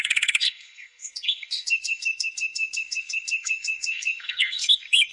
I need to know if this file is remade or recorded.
remade